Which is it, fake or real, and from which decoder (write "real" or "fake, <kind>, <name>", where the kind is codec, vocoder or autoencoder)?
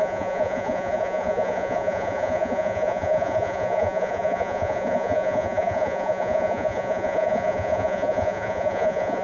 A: fake, vocoder, Vocos